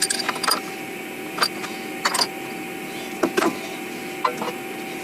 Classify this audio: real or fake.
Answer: real